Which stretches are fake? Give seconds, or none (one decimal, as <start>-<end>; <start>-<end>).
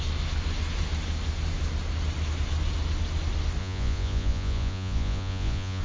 3.6-5.8